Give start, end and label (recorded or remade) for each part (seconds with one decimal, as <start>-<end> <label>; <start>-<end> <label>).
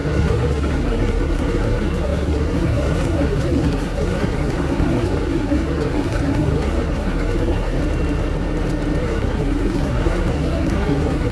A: 0.0-7.8 remade; 7.8-9.0 recorded; 9.0-11.3 remade